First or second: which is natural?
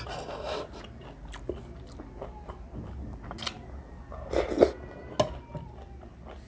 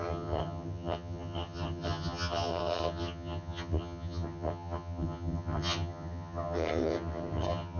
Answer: first